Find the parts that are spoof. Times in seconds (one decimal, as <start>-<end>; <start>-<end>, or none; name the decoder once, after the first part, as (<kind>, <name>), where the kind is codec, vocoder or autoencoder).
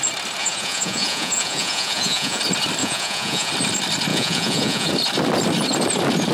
0.4-2.4 (vocoder, Vocos); 2.8-3.5; 4.1-4.9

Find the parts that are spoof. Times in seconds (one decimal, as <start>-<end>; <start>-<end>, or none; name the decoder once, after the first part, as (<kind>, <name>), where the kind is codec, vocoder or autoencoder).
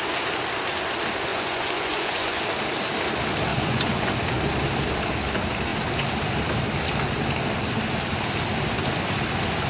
1.3-2.4 (vocoder, Vocos); 3.5-4.1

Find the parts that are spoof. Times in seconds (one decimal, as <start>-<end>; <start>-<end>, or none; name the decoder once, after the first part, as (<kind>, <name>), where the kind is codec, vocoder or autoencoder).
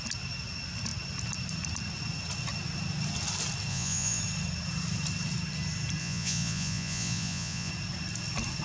3.7-4.2 (vocoder, Vocos); 6.0-7.7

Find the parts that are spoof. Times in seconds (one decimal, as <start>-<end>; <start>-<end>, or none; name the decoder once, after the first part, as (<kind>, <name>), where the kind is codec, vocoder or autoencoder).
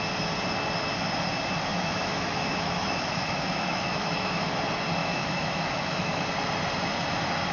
1.7-4.6 (autoencoder, DAC-VAE); 5.0-6.2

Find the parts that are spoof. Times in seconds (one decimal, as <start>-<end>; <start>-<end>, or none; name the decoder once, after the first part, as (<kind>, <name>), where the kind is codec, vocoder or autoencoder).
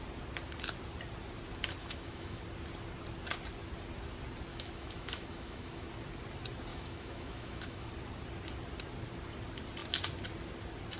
1.8-2.4 (autoencoder, DAC-VAE); 4.5-5.9; 6.7-7.9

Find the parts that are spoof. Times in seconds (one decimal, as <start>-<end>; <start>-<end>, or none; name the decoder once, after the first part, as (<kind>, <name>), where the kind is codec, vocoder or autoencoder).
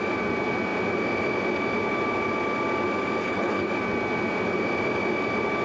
3.2-3.7 (codec, HILCodec)